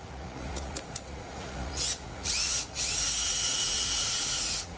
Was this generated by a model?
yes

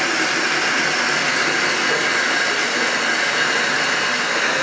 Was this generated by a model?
no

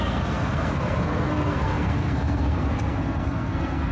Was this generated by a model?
yes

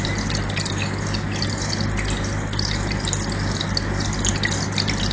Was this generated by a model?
no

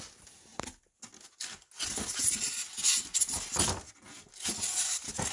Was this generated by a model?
no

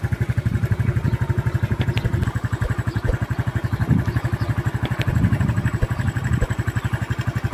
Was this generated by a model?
no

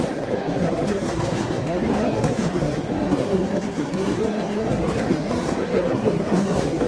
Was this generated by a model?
yes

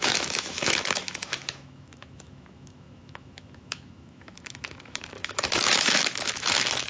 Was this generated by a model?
yes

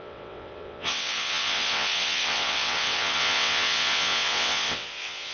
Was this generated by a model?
yes